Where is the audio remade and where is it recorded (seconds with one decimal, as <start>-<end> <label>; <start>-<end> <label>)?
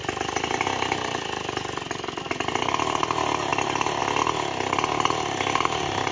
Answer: 0.0-2.2 remade; 2.2-6.1 recorded